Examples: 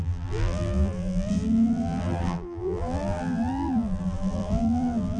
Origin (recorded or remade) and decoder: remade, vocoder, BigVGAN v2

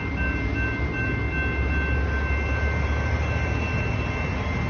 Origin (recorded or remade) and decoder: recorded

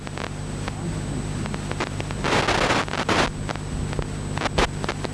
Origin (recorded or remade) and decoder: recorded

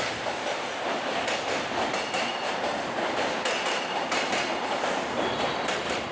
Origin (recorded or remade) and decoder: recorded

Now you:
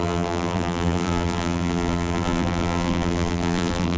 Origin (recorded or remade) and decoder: remade, vocoder, BigVGAN v2